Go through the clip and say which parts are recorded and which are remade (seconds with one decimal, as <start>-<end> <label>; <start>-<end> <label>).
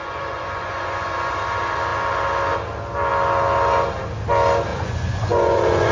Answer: 0.0-1.4 remade; 1.4-4.7 recorded; 4.7-5.9 remade